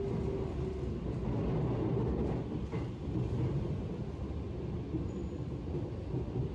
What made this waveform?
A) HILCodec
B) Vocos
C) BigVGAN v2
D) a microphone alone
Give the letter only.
D